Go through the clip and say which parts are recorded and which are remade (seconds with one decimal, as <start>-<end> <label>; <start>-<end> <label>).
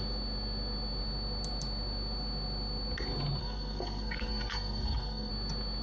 0.0-3.4 recorded; 3.4-5.3 remade; 5.3-5.8 recorded